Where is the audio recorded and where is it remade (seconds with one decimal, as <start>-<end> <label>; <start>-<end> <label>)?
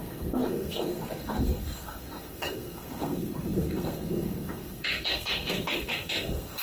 0.0-6.6 remade